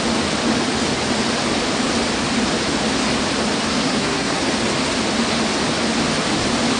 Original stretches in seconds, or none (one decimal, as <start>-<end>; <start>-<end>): 0.0-3.7; 4.4-6.8